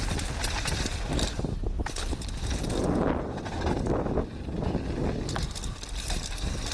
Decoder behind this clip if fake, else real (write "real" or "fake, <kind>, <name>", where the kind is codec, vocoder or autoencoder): real